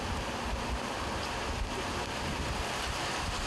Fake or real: real